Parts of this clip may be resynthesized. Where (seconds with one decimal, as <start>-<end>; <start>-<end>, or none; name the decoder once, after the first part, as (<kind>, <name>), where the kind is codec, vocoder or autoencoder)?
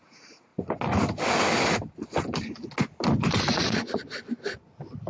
0.0-0.5 (vocoder, Vocos); 3.3-4.0